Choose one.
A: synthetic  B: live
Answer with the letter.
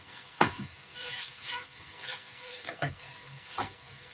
A